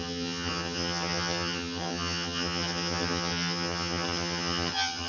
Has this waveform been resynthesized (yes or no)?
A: yes